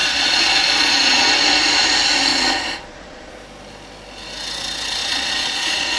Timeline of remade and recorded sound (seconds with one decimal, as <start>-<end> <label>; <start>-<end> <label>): 0.0-1.3 remade; 1.3-2.3 recorded; 2.3-3.3 remade; 3.3-5.0 recorded; 5.0-6.0 remade

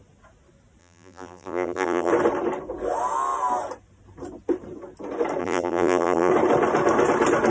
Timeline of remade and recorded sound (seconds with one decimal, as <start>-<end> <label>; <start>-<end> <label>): 0.0-0.8 recorded; 0.8-2.1 remade; 2.1-5.4 recorded; 5.4-6.3 remade; 6.3-7.5 recorded